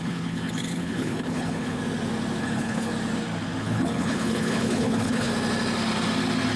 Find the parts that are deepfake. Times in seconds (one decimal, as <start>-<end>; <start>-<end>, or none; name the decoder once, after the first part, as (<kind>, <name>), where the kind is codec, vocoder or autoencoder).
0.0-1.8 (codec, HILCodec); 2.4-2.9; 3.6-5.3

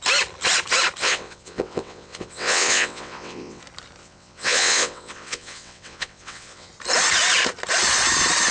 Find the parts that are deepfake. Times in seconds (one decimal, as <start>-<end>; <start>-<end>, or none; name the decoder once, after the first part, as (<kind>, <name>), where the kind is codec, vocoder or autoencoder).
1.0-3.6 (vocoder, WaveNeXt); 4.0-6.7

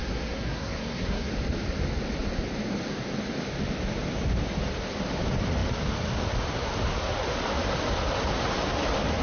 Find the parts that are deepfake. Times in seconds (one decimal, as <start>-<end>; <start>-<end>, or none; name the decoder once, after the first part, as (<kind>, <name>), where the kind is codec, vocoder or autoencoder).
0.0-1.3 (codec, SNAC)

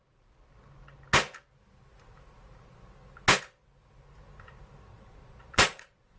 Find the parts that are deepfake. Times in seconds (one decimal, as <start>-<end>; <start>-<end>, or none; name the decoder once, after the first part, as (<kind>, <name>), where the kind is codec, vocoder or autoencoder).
4.9-6.2 (vocoder, Vocos)

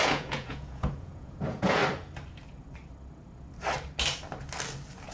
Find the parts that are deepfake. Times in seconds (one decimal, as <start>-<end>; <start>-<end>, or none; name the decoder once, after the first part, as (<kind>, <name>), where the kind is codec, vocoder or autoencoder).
0.0-1.8 (vocoder, Vocos)

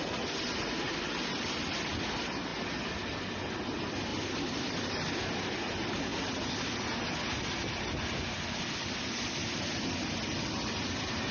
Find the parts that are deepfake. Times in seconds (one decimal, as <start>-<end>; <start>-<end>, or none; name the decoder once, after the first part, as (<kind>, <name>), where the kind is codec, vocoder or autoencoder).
4.1-5.2 (vocoder, BigVGAN v2)